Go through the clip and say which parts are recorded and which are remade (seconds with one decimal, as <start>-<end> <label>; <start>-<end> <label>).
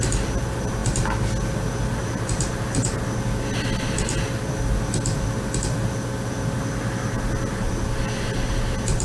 0.0-9.0 recorded